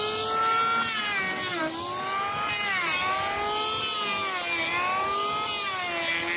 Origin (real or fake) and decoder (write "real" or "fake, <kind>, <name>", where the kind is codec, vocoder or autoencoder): real